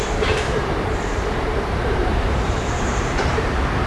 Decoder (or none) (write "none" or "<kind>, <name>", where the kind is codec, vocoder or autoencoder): vocoder, BigVGAN v2